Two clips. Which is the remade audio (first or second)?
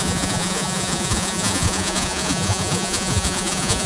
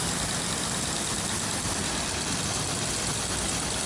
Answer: first